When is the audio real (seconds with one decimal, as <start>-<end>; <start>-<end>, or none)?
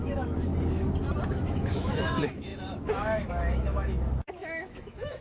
0.5-1.3